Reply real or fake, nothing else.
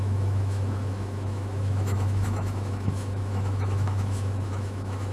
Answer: fake